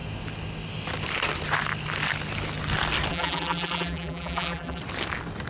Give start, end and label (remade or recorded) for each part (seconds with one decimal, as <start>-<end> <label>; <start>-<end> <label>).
0.0-3.1 recorded; 3.1-4.8 remade; 4.8-5.5 recorded